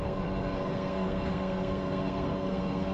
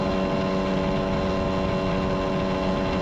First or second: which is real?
second